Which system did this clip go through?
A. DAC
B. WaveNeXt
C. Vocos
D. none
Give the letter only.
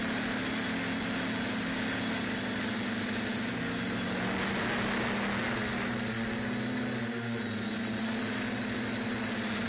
D